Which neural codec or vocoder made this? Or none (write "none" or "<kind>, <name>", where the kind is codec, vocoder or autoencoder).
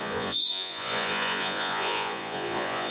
vocoder, Vocos